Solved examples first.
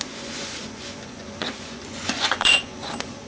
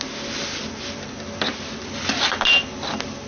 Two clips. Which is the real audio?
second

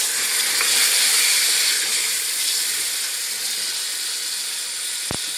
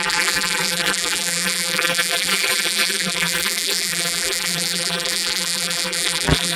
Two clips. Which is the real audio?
first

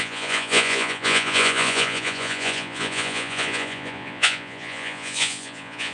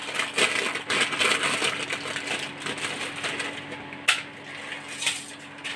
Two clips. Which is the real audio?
second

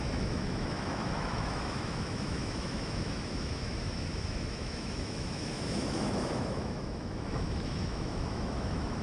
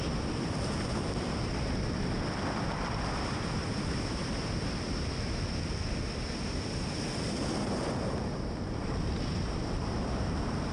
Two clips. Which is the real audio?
second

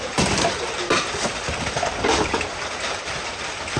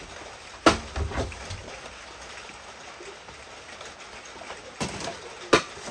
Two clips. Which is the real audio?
second